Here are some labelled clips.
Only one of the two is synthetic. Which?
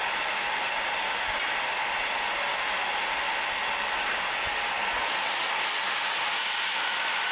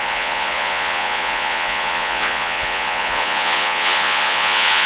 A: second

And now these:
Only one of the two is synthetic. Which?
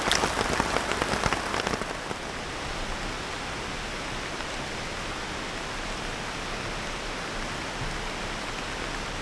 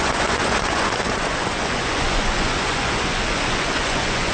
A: second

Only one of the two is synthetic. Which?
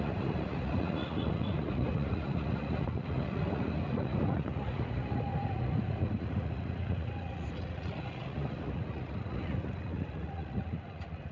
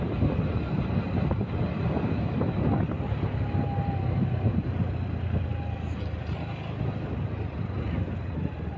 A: first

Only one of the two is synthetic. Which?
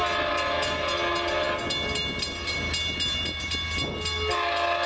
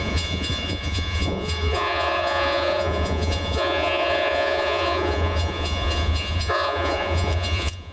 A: second